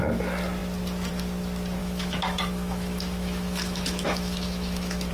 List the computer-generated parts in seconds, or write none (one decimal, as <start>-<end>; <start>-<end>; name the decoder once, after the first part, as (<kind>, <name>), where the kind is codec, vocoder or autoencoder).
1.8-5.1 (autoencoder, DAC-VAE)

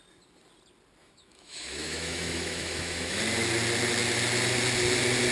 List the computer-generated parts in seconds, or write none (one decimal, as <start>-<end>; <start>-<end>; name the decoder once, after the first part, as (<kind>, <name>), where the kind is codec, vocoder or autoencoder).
1.0-3.2 (autoencoder, DAC-VAE)

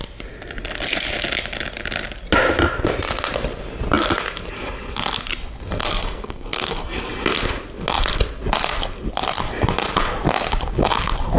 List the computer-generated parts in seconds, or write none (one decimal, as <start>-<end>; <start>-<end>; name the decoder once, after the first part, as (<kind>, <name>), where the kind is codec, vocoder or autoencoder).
5.8-7.1 (codec, SNAC)

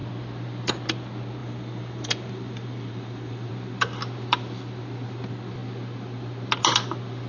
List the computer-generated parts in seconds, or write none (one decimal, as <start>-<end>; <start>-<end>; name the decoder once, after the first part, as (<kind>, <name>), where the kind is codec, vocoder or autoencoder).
1.4-3.5 (vocoder, BigVGAN v2)